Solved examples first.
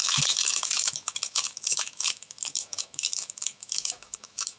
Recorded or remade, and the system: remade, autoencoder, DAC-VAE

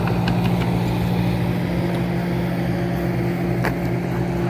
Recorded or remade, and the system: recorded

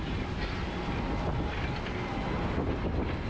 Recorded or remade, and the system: recorded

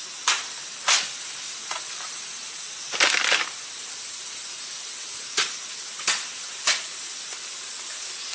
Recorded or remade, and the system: recorded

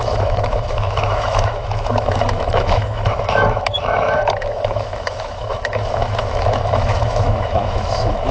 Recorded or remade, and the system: remade, autoencoder, DAC-VAE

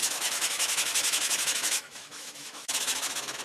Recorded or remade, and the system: remade, autoencoder, DAC-VAE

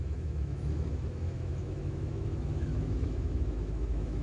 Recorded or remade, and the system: remade, autoencoder, DAC-VAE